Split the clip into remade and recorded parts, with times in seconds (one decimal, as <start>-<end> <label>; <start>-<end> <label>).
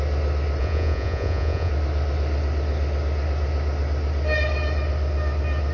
0.0-0.6 recorded; 0.6-1.7 remade; 1.7-5.7 recorded